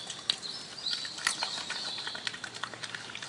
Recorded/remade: recorded